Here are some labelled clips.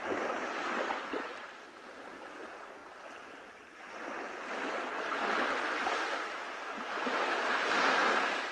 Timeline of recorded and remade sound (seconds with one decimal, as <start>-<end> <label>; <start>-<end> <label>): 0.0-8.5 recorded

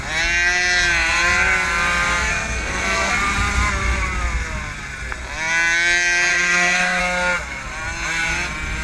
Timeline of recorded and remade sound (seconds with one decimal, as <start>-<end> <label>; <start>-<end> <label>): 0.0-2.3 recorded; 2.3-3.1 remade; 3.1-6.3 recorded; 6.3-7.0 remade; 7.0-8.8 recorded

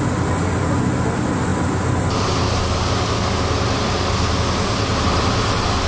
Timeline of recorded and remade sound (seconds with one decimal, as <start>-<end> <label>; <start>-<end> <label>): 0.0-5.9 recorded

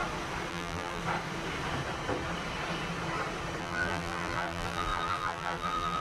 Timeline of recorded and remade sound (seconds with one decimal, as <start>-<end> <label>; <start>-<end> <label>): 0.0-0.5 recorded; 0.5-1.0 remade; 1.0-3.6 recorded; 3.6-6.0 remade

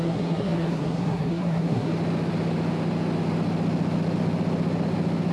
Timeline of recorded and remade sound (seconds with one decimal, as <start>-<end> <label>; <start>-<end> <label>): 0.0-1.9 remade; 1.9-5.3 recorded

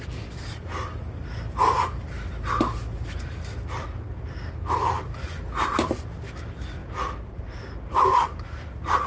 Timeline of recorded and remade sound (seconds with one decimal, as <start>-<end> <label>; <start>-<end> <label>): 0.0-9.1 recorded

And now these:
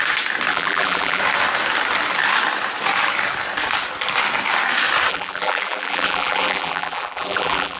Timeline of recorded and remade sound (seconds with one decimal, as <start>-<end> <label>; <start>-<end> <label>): 0.0-0.5 recorded; 0.5-1.2 remade; 1.2-5.1 recorded; 5.1-7.8 remade